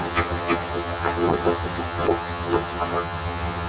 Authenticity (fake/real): fake